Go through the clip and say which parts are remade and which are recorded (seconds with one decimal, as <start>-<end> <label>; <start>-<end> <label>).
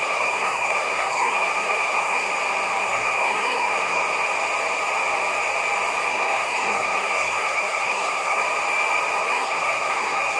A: 0.0-2.3 remade; 2.3-2.8 recorded; 2.8-4.0 remade; 4.0-6.1 recorded; 6.1-8.4 remade; 8.4-9.2 recorded; 9.2-10.4 remade